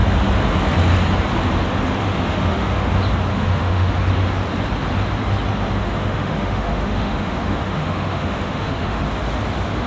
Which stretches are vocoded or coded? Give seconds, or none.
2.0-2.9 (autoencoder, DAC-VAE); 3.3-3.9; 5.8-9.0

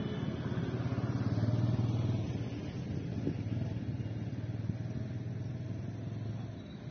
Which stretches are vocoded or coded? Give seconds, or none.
none

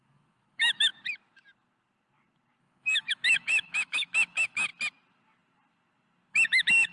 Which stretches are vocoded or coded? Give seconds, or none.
0.0-0.9 (autoencoder, DAC-VAE); 2.6-4.7; 6.3-6.9

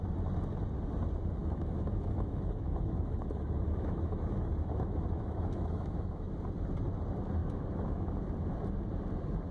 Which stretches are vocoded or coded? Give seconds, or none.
1.4-6.3 (autoencoder, DAC-VAE); 7.4-8.2

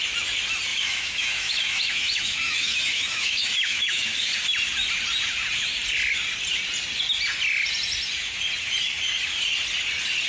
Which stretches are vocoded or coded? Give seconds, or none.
0.7-4.3 (autoencoder, DAC-VAE)

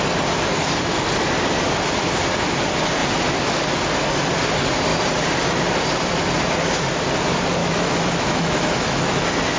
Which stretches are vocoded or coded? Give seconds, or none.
7.6-9.6 (autoencoder, DAC-VAE)